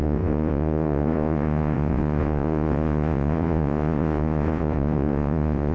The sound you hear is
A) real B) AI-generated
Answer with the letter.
B